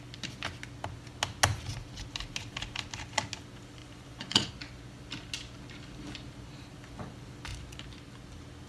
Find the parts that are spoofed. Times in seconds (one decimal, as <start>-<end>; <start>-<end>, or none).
3.8-4.5